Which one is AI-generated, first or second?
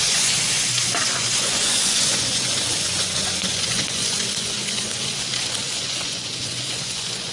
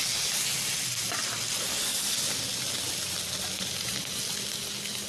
first